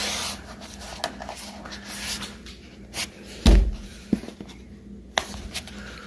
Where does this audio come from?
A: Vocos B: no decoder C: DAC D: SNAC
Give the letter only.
B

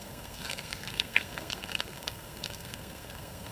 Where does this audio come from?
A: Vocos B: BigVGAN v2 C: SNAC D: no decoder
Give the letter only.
C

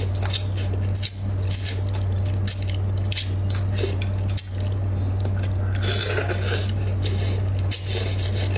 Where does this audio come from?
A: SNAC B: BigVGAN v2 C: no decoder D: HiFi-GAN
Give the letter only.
C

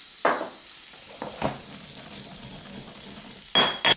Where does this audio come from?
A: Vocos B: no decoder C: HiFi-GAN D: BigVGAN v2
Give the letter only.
B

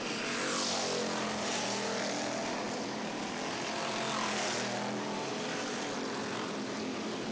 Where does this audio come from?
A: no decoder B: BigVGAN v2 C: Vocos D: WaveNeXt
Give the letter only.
B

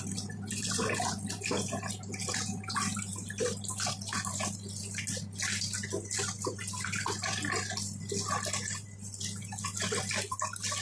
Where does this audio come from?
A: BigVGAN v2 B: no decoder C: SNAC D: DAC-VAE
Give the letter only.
B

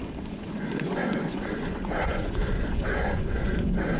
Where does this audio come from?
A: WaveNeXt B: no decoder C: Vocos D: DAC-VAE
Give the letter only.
C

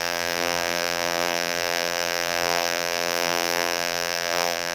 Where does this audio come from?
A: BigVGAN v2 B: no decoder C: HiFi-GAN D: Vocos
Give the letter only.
A